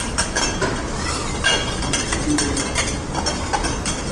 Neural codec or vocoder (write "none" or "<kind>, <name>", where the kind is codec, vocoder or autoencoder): vocoder, BigVGAN v2